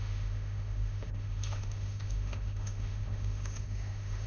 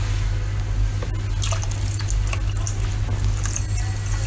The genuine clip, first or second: second